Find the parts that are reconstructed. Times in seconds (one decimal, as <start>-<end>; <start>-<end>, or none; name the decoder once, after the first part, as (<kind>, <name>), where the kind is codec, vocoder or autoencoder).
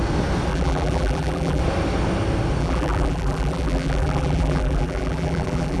0.5-1.6 (vocoder, BigVGAN v2); 2.6-5.8